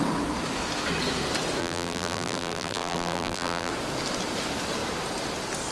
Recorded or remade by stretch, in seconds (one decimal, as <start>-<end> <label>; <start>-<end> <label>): 0.0-1.6 recorded; 1.6-3.7 remade; 3.7-5.7 recorded